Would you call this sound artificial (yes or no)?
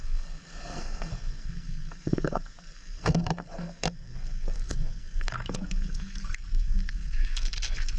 yes